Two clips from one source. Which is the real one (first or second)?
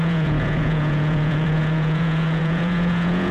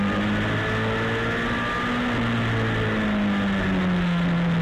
second